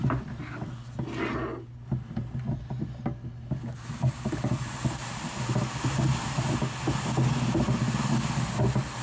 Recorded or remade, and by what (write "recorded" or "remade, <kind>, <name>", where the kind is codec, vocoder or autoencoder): recorded